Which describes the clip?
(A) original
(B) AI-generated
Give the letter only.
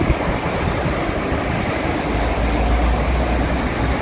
A